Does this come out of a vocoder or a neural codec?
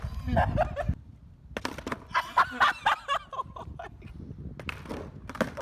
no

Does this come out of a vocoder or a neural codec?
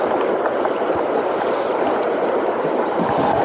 no